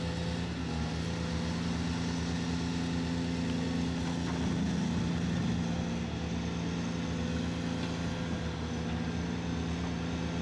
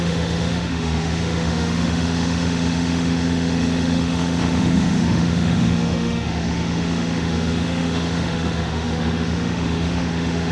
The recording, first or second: first